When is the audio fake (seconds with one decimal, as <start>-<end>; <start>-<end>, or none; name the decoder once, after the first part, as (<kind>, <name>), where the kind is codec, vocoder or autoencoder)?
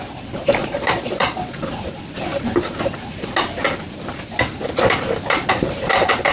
0.6-1.6 (vocoder, Vocos)